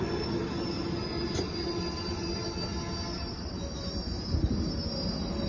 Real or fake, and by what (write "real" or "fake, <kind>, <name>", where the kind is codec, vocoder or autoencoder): real